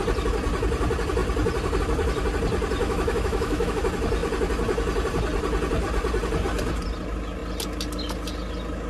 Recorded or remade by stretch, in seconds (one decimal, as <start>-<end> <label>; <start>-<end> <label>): 0.0-2.8 recorded; 2.8-3.8 remade; 3.8-8.9 recorded